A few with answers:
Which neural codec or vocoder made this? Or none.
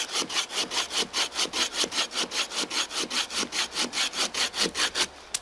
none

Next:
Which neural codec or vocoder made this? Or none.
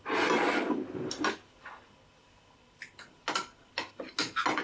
none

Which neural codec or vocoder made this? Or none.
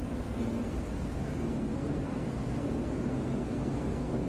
codec, SNAC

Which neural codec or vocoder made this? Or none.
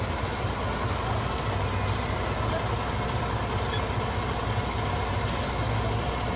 none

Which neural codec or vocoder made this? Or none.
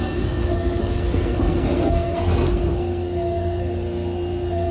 codec, SNAC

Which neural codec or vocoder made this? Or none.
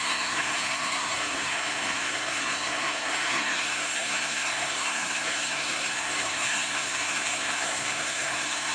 codec, SNAC